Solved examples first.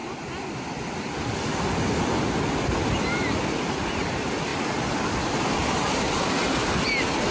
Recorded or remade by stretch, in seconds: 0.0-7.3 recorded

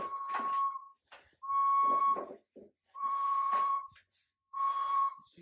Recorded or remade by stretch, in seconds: 0.0-2.8 recorded; 2.8-5.4 remade

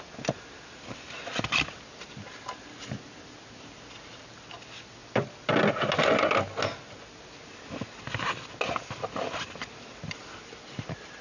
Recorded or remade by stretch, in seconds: 0.0-11.2 recorded